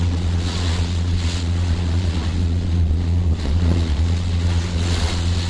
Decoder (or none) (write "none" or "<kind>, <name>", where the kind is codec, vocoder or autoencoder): vocoder, Vocos